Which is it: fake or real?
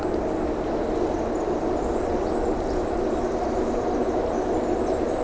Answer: real